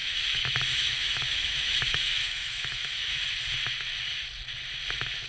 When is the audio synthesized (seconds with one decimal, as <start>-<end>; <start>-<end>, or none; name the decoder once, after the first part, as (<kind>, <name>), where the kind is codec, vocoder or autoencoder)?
0.0-3.2 (autoencoder, DAC-VAE)